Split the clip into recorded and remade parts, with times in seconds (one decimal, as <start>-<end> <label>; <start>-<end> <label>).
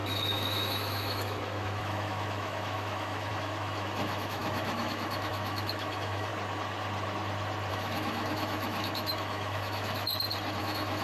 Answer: 0.0-6.3 remade; 6.3-7.7 recorded; 7.7-10.1 remade; 10.1-10.6 recorded; 10.6-11.0 remade